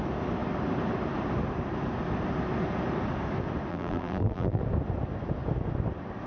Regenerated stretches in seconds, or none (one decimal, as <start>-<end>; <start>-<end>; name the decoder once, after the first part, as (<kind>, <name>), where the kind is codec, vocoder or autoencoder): 3.7-4.6 (vocoder, BigVGAN v2)